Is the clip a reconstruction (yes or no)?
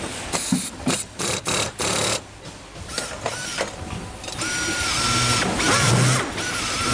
no